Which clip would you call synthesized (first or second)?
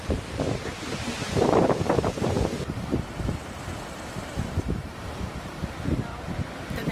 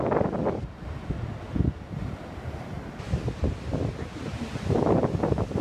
first